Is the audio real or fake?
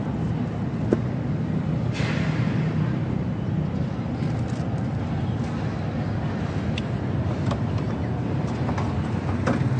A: real